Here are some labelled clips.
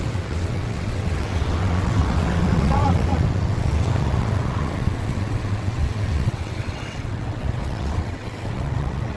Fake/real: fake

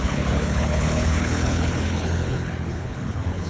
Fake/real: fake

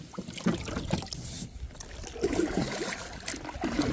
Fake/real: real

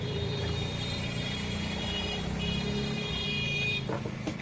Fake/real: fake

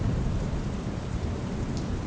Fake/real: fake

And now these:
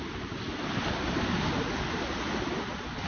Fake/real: real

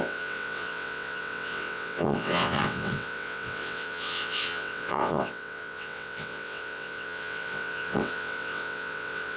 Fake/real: fake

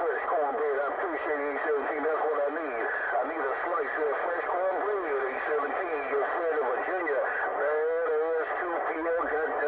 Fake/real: real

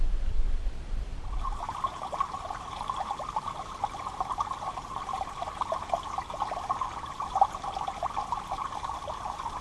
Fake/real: fake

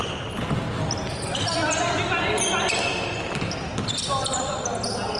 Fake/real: real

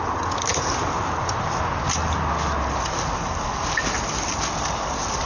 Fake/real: real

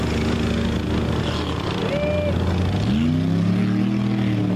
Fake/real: real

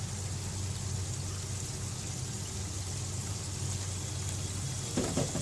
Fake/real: real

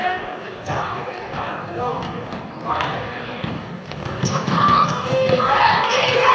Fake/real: fake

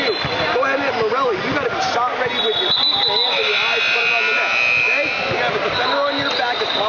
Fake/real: real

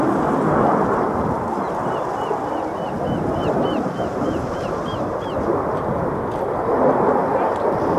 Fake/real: real